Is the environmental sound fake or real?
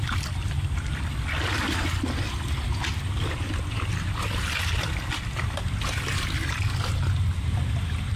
real